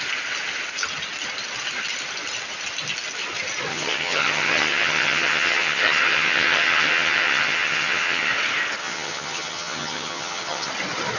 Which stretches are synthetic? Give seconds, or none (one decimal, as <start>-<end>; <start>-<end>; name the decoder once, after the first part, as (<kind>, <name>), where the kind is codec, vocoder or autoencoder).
3.7-8.3 (vocoder, HiFi-GAN); 8.8-10.7